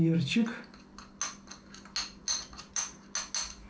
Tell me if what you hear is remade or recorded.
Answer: recorded